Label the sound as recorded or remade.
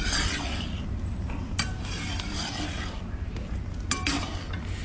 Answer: recorded